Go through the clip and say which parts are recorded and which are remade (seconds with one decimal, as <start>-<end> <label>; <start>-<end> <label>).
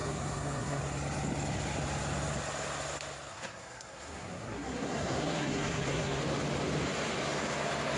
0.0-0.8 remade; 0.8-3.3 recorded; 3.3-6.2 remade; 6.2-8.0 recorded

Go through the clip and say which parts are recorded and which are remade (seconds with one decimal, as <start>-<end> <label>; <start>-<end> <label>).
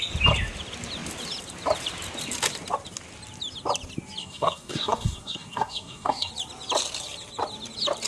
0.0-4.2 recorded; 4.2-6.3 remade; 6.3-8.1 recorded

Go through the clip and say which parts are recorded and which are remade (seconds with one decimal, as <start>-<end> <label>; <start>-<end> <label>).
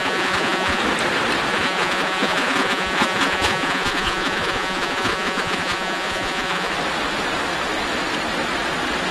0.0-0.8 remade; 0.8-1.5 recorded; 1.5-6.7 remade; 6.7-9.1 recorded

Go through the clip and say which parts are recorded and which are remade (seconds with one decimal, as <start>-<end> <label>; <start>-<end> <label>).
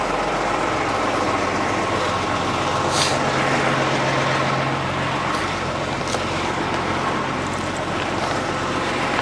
0.0-5.4 recorded; 5.4-6.0 remade; 6.0-9.2 recorded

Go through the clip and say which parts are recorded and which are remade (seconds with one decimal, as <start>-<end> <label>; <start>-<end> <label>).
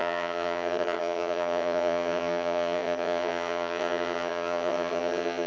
0.0-5.5 remade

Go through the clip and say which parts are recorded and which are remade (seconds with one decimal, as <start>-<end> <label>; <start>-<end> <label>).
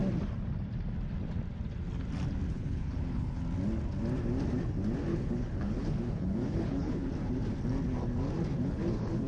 0.0-2.5 recorded; 2.5-3.4 remade; 3.4-5.1 recorded; 5.1-7.1 remade; 7.1-8.5 recorded; 8.5-9.3 remade